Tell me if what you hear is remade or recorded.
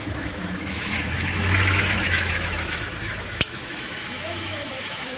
remade